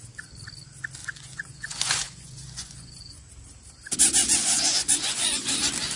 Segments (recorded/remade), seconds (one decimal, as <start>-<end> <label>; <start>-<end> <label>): 0.0-1.0 recorded; 1.0-3.3 remade; 3.3-4.2 recorded; 4.2-5.5 remade; 5.5-6.0 recorded